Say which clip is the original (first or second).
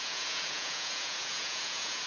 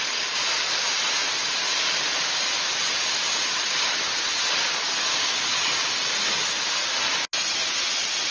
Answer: second